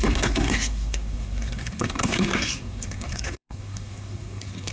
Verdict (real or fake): fake